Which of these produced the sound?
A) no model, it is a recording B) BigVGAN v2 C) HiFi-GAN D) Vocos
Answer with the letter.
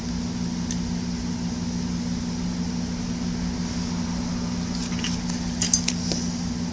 A